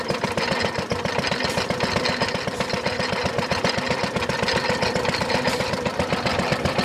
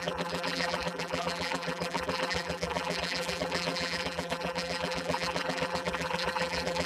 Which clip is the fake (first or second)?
second